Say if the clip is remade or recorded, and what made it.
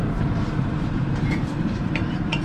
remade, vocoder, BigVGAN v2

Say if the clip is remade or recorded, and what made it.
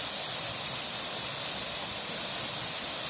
recorded